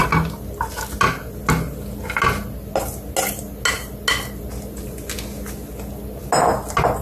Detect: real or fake real